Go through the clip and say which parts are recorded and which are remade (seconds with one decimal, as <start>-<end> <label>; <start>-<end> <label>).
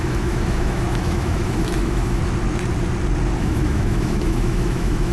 0.0-2.2 remade; 2.2-3.4 recorded; 3.4-5.1 remade